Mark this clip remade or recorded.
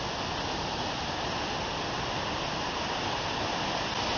recorded